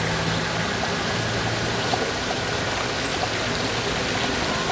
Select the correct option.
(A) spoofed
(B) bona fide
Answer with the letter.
B